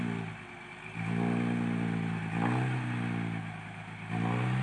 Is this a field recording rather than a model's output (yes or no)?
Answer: yes